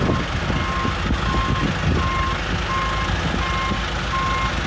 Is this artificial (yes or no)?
no